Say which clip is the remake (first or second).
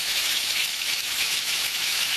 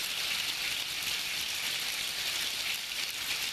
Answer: first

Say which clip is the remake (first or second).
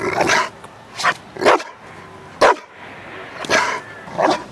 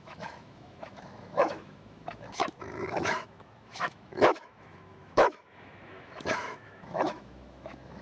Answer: second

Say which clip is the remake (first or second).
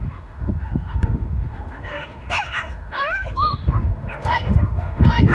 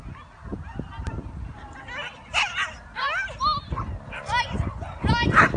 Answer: first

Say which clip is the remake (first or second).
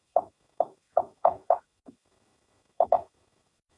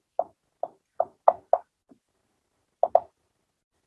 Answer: first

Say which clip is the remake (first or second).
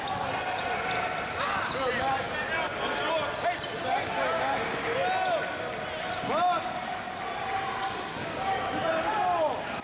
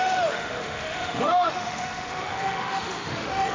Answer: second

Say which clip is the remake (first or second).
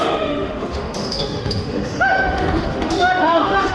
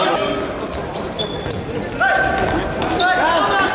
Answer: first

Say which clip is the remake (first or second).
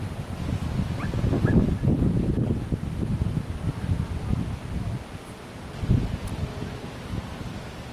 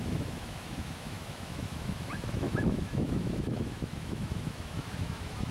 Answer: second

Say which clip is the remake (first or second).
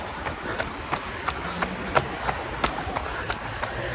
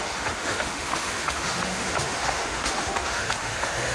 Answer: second